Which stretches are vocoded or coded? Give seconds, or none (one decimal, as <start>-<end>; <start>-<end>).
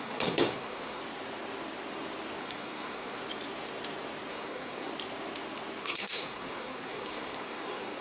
0.0-1.0; 2.4-3.2; 4.3-4.9; 5.8-8.0